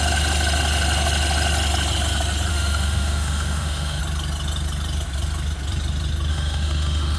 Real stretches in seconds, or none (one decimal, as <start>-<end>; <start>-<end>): 0.0-2.5; 4.0-6.3